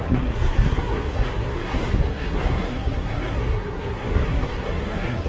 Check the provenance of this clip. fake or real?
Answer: fake